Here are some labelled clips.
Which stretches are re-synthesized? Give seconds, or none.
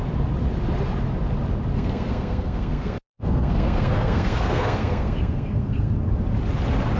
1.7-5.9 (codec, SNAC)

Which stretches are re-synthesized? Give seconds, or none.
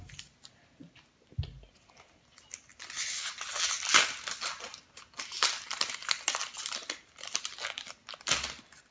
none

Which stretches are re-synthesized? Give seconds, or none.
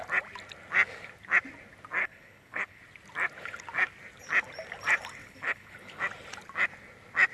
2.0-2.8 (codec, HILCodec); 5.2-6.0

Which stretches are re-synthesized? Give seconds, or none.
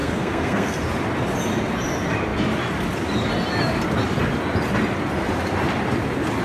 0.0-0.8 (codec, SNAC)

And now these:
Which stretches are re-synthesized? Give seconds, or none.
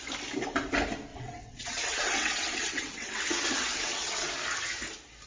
1.1-4.3 (vocoder, WaveNeXt)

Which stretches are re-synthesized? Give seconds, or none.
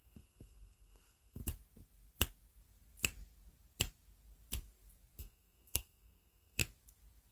0.0-1.4 (codec, SNAC); 5.2-6.6